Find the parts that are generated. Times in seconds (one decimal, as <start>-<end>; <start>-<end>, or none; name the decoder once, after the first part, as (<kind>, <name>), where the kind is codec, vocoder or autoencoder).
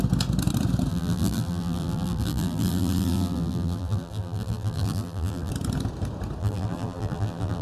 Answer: 0.9-5.5 (vocoder, BigVGAN v2); 6.4-7.6